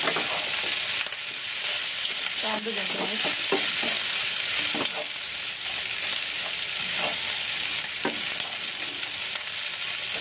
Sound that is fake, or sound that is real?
real